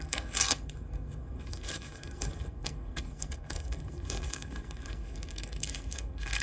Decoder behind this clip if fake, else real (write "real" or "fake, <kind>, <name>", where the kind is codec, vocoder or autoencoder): fake, codec, SNAC